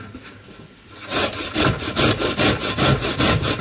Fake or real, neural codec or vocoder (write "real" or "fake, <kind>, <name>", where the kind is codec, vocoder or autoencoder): real